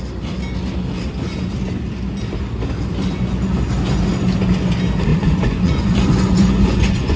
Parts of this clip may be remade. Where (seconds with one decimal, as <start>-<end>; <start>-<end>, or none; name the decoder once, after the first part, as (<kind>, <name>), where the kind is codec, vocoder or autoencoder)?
5.1-7.2 (vocoder, Vocos)